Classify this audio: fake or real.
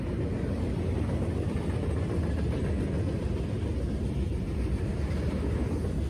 real